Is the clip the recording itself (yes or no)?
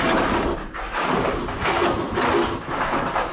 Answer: yes